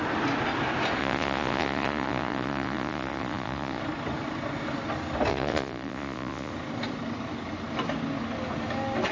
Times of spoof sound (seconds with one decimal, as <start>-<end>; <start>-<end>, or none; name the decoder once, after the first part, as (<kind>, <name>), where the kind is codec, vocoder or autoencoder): 1.0-3.8 (vocoder, Vocos); 5.3-6.5